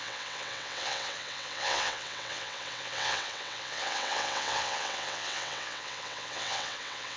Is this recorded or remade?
remade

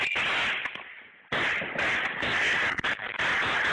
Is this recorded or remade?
recorded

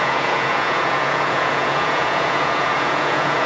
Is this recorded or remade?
remade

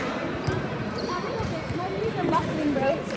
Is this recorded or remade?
remade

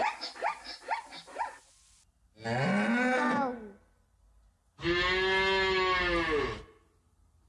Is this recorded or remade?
recorded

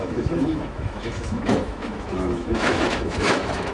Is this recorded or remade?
remade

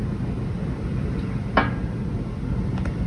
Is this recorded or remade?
recorded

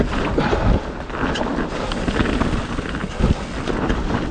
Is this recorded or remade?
recorded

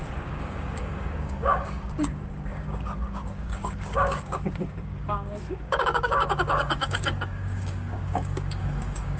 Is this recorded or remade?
remade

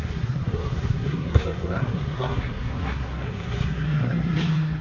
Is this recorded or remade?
remade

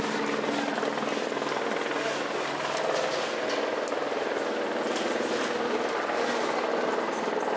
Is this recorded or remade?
recorded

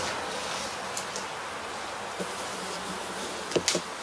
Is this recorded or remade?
recorded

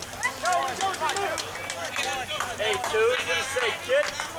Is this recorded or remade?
recorded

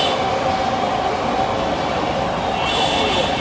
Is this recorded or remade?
recorded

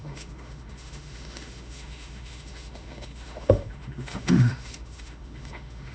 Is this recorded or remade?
remade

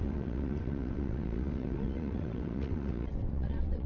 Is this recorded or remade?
remade